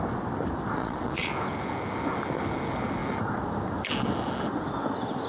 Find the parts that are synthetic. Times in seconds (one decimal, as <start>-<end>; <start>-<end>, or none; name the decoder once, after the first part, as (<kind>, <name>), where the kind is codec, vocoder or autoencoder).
0.8-1.3 (vocoder, Vocos)